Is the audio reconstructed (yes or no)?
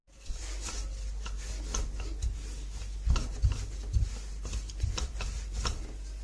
no